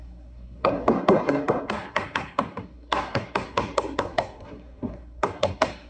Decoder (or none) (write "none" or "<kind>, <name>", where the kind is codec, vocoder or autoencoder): codec, SNAC